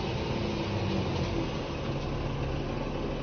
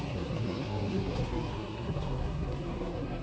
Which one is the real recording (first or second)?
first